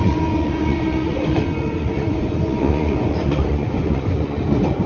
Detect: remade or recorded remade